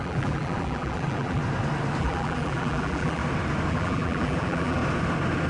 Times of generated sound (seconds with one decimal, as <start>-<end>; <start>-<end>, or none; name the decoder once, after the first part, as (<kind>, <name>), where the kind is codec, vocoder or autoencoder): 0.0-1.4 (vocoder, BigVGAN v2); 2.0-3.2; 3.7-4.8

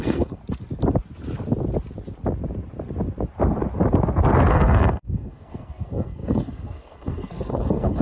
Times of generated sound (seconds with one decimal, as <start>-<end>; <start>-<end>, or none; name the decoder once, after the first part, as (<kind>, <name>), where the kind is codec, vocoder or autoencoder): 0.0-0.4 (codec, SNAC); 4.5-8.0